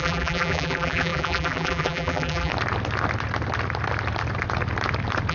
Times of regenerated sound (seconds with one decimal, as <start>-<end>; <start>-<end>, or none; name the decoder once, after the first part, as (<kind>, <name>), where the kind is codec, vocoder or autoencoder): 0.0-2.5 (vocoder, BigVGAN v2)